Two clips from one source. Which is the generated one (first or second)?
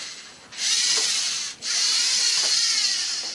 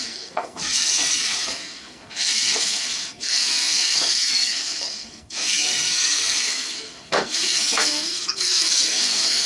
second